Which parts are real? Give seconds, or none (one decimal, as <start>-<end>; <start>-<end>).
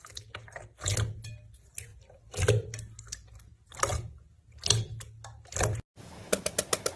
0.0-7.0